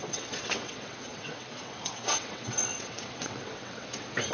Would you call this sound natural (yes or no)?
no